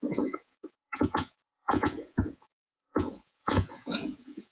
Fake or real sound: fake